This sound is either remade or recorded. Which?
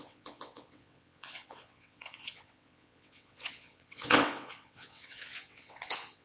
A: remade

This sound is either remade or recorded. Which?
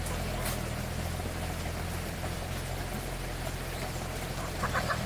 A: recorded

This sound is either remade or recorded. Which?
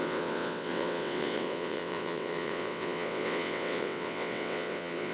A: remade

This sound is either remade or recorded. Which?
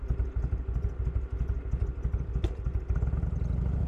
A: recorded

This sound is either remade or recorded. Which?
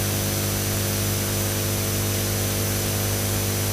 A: recorded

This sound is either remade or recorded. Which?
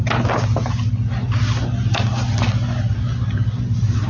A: recorded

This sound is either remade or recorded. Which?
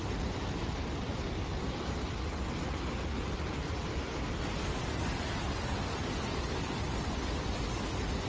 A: recorded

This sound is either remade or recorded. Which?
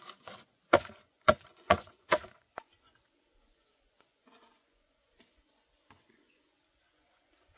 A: remade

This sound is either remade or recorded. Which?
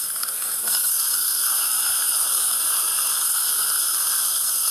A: remade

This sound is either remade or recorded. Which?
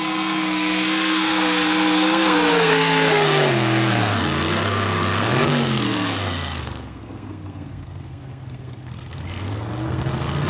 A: remade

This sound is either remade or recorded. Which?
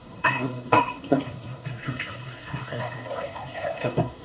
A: remade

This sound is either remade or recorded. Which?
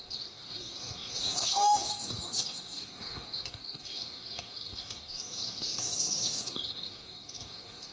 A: remade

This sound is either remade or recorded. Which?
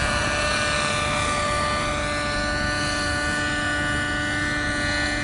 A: recorded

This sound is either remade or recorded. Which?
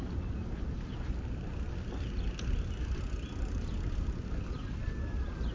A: recorded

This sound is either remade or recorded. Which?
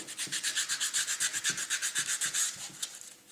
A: recorded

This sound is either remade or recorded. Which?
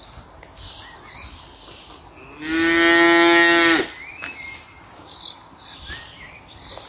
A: recorded